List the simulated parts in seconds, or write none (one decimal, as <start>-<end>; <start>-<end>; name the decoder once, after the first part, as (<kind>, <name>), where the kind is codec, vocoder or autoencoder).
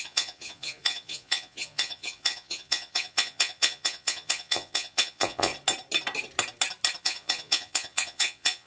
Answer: 0.0-5.5 (vocoder, Vocos); 7.0-8.7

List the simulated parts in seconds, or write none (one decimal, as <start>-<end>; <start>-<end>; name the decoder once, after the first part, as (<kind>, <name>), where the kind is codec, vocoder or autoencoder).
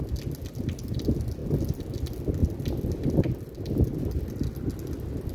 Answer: none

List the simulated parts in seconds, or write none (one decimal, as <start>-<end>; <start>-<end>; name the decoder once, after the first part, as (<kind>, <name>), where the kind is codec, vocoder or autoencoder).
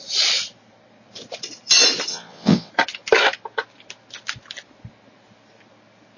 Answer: 2.1-2.7 (vocoder, WaveNeXt)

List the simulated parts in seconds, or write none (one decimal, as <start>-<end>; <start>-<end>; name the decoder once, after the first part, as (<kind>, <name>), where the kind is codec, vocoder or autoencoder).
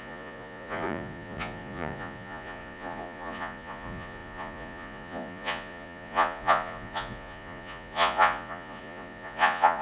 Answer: 0.0-9.8 (vocoder, Vocos)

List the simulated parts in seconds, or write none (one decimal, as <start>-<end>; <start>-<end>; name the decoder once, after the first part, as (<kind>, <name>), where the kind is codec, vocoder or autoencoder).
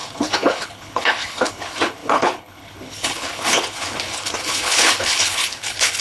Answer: 0.0-6.0 (codec, HILCodec)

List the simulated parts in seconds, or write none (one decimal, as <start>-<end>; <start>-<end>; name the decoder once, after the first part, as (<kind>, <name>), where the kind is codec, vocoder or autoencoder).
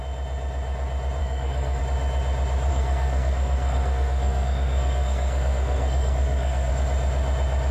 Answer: 1.2-1.8 (codec, SNAC); 2.7-6.7